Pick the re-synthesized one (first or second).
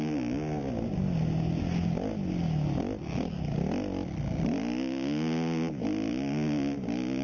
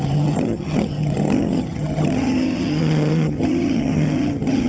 second